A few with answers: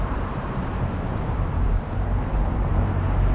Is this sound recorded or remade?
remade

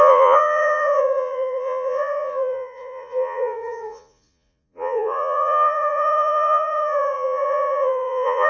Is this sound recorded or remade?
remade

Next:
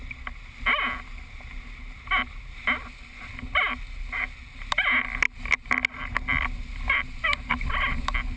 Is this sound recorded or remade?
recorded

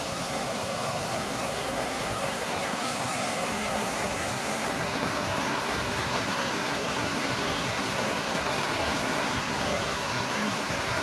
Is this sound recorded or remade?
remade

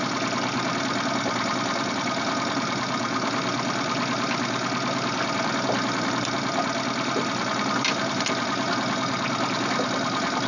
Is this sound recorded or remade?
recorded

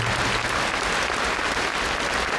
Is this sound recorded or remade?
recorded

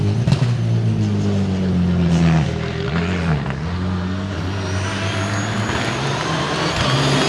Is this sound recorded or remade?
recorded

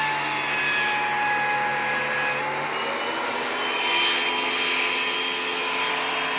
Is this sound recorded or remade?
recorded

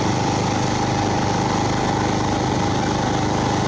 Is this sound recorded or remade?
recorded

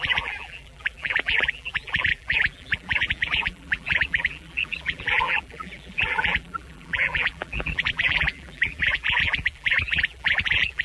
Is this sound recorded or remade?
remade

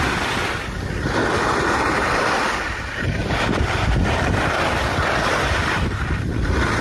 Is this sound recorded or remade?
remade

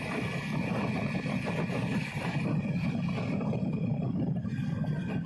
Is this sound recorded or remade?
remade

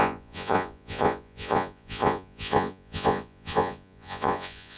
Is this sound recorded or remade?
remade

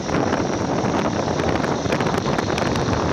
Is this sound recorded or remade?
recorded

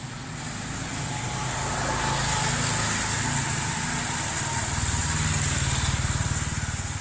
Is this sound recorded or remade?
recorded